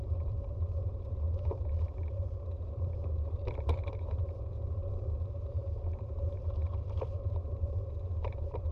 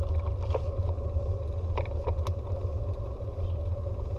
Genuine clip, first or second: second